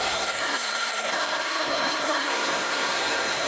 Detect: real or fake fake